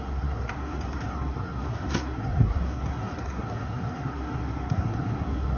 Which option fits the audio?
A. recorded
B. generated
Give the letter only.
B